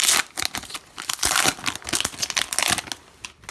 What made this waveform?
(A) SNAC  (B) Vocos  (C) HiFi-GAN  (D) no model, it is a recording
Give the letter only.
D